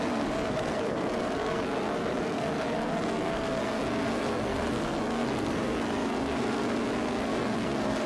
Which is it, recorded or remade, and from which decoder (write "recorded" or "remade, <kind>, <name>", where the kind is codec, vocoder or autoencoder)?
remade, codec, SNAC